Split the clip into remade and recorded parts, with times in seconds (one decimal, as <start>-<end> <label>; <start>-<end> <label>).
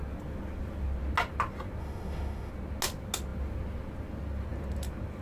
0.0-1.8 recorded; 1.8-2.5 remade; 2.5-5.2 recorded